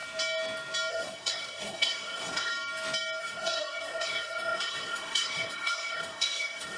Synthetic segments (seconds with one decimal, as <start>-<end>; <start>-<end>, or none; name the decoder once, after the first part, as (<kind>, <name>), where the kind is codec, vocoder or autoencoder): 0.9-2.5 (codec, SNAC); 3.2-6.8